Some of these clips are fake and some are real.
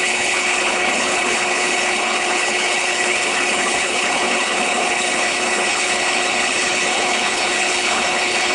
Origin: fake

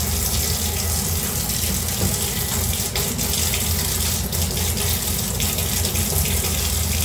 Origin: real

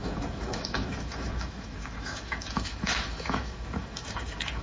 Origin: fake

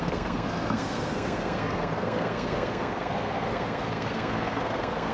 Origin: fake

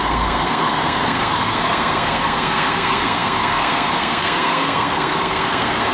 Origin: fake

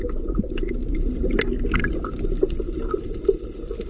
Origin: real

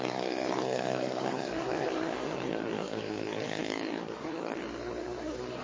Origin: fake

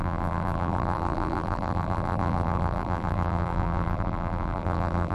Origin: fake